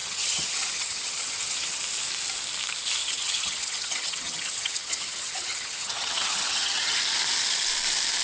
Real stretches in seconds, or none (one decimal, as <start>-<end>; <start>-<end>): 1.8-3.0; 7.0-8.2